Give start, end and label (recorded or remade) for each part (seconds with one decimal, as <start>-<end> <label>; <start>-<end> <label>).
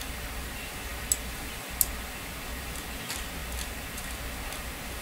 0.0-5.0 recorded